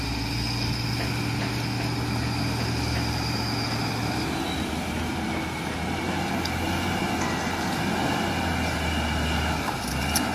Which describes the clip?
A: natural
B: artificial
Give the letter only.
A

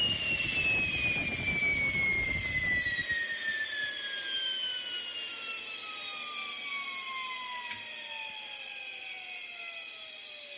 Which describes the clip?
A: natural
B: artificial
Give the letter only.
A